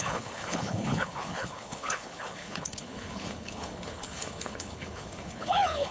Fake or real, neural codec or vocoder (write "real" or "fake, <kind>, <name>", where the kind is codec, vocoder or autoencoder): fake, codec, HILCodec